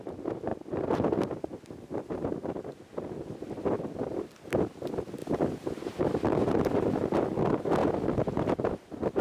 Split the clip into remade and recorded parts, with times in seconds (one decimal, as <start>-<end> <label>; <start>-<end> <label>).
0.0-0.5 recorded; 0.5-1.1 remade; 1.1-2.9 recorded; 2.9-4.7 remade; 4.7-5.2 recorded; 5.2-6.0 remade; 6.0-7.8 recorded; 7.8-9.2 remade

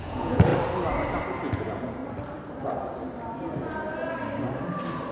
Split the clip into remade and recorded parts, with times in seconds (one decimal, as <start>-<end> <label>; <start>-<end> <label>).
0.0-0.5 remade; 0.5-1.6 recorded; 1.6-2.0 remade; 2.0-5.1 recorded

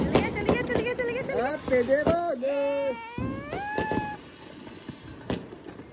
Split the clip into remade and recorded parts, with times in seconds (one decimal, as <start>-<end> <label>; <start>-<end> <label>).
0.0-5.9 recorded

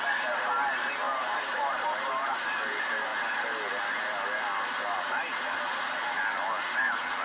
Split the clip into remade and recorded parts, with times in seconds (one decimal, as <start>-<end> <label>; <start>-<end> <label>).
0.0-3.1 remade; 3.1-6.6 recorded; 6.6-7.2 remade

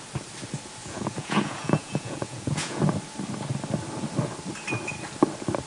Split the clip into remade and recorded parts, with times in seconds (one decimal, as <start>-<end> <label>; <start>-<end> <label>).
0.0-0.8 recorded; 0.8-2.8 remade; 2.8-5.7 recorded

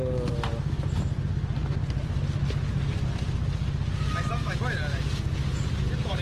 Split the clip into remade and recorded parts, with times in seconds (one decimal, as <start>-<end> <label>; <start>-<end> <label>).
0.0-5.4 recorded; 5.4-6.2 remade

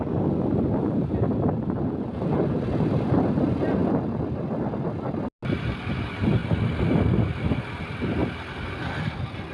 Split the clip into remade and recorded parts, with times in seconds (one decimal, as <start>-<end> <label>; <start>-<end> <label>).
0.0-9.5 recorded

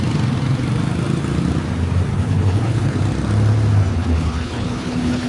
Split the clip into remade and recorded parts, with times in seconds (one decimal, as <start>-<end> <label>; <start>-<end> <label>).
0.0-2.1 recorded; 2.1-3.0 remade; 3.0-3.9 recorded; 3.9-5.3 remade